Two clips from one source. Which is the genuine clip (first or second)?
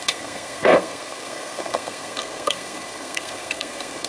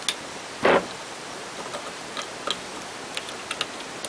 second